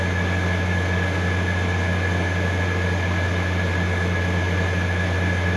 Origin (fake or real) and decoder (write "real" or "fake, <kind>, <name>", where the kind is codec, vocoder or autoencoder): real